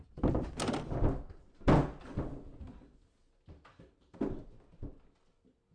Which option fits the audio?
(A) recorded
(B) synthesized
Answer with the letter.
A